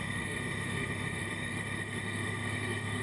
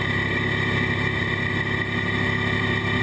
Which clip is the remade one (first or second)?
first